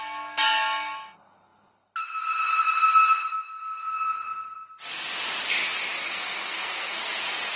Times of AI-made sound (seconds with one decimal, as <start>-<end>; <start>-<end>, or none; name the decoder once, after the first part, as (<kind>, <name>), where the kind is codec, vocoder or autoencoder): 6.0-7.6 (codec, SNAC)